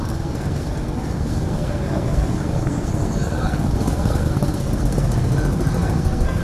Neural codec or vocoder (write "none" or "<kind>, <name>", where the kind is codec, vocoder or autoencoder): codec, SNAC